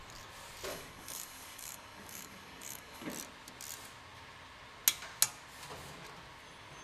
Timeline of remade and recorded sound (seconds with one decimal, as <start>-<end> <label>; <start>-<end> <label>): 0.0-0.7 recorded; 0.7-3.1 remade; 3.1-6.8 recorded